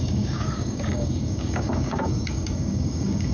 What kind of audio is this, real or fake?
fake